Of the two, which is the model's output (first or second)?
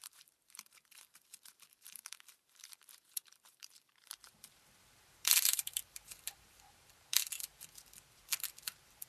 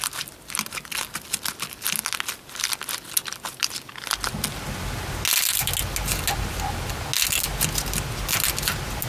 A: first